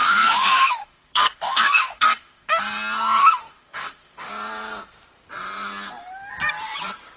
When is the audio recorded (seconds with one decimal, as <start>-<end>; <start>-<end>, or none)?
2.6-3.2; 4.3-7.2